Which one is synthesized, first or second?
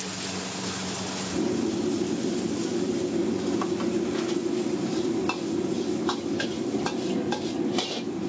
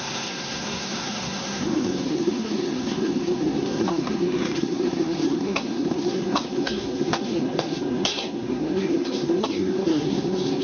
second